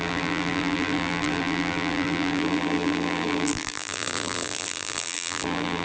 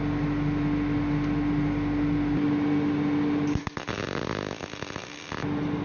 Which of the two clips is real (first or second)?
second